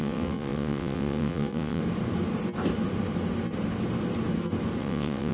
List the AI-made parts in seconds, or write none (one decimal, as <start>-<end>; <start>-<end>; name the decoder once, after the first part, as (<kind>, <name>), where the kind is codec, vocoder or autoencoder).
0.0-1.8 (vocoder, WaveNeXt); 4.8-5.3